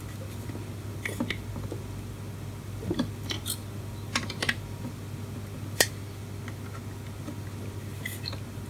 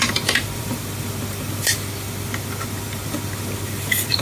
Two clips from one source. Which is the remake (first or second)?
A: second